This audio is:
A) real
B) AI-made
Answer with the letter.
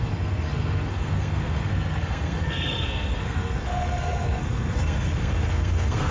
B